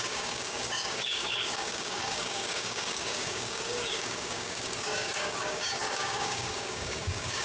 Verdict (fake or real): fake